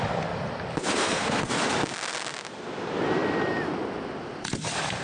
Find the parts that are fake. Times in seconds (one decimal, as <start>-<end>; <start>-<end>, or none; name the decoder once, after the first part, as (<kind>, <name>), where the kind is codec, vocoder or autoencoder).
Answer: 1.0-1.5 (codec, SNAC)